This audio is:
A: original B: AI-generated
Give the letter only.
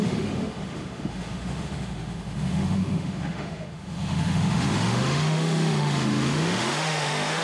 B